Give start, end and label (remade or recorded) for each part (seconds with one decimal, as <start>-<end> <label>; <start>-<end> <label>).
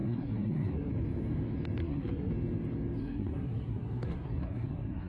0.0-0.9 remade; 0.9-1.8 recorded; 1.8-2.3 remade; 2.3-3.0 recorded; 3.0-5.1 remade